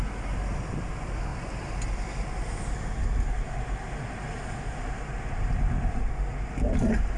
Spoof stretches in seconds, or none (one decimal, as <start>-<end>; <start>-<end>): none